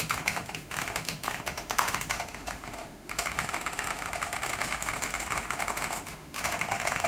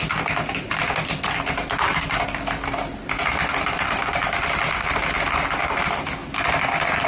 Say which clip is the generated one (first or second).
first